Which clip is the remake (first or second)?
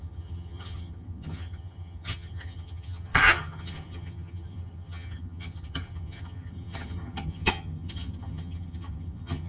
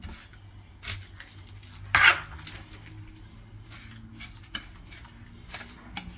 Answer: first